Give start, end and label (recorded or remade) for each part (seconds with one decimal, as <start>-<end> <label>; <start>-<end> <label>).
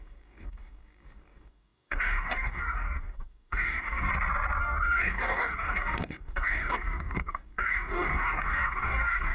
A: 0.0-4.1 remade; 4.1-4.6 recorded; 4.6-9.3 remade